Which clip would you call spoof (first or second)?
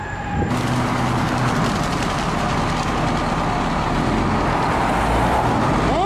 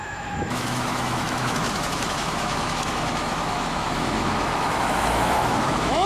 second